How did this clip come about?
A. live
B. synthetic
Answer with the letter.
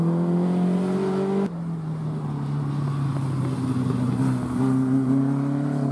A